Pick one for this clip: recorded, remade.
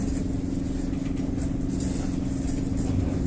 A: recorded